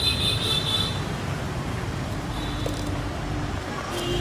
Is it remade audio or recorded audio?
recorded